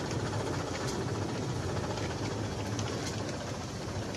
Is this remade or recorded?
recorded